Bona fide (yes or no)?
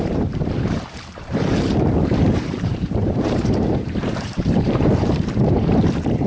no